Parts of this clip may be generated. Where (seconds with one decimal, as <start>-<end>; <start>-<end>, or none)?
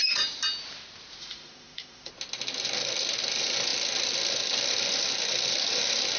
1.2-2.1